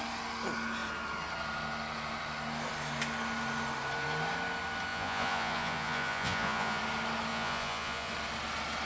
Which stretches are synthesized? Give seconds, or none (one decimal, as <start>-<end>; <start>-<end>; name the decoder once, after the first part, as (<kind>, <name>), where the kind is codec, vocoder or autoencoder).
4.9-6.8 (vocoder, Vocos); 7.3-8.1